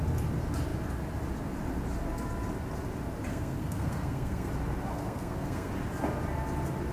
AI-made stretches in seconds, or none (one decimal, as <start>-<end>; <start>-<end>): 3.3-4.5; 4.9-5.7